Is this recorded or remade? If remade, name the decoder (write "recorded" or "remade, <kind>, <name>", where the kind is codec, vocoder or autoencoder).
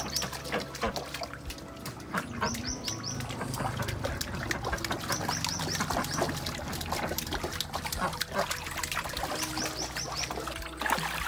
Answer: recorded